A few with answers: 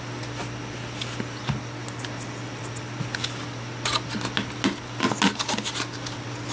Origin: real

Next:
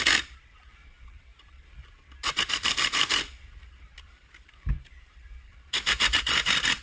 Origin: fake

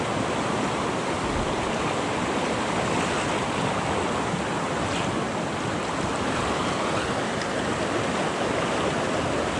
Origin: real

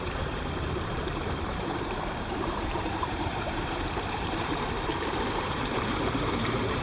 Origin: fake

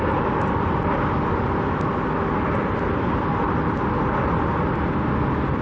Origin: real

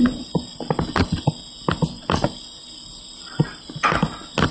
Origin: real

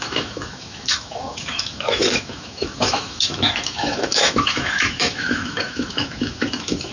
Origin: fake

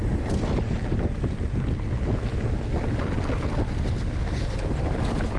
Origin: real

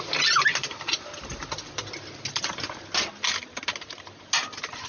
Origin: real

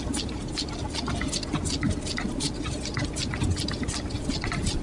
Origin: real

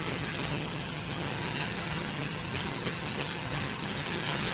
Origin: fake